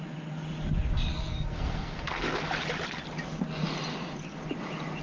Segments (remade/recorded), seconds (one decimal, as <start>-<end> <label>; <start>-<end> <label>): 0.0-1.1 recorded; 1.1-2.4 remade; 2.4-5.0 recorded